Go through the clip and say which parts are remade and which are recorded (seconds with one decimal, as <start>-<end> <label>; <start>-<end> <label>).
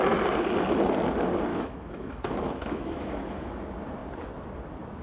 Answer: 0.0-1.5 recorded; 1.5-3.5 remade; 3.5-5.0 recorded